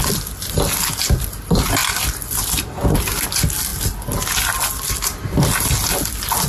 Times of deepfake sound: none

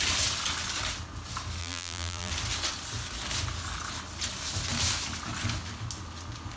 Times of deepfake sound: 1.6-2.3 (vocoder, BigVGAN v2)